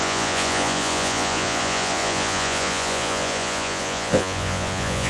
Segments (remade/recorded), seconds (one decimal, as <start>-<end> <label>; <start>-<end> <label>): 0.0-5.1 remade